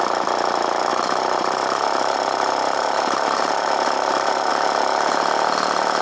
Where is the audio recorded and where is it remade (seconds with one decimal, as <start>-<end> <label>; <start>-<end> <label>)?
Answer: 0.0-0.9 recorded; 0.9-4.5 remade; 4.5-6.0 recorded